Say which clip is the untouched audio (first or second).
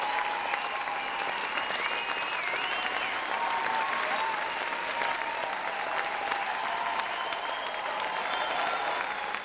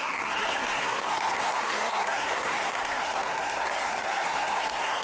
first